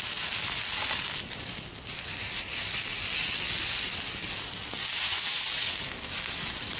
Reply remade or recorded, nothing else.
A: recorded